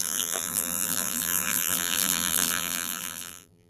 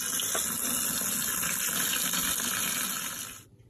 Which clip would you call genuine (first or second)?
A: second